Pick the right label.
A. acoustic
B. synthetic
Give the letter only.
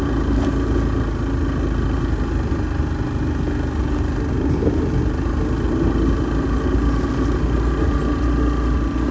A